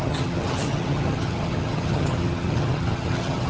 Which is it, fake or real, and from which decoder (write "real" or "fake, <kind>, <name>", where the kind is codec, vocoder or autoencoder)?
fake, vocoder, HiFi-GAN